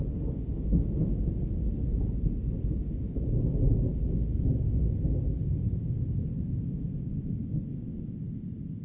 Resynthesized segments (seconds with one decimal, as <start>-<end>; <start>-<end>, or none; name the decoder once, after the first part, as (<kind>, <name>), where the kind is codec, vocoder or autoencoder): none